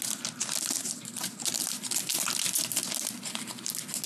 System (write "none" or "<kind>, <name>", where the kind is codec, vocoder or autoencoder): none